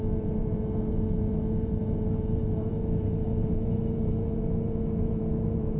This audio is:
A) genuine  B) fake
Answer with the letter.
B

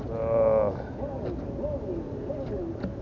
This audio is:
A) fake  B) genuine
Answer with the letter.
B